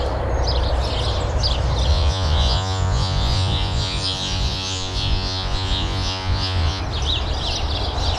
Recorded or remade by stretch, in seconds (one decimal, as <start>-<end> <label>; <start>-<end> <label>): 0.0-1.9 recorded; 1.9-6.8 remade; 6.8-8.2 recorded